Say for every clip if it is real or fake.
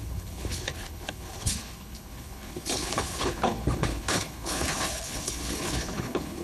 fake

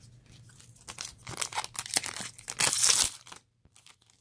real